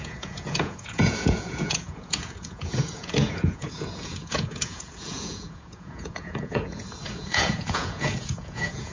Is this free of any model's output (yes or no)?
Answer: no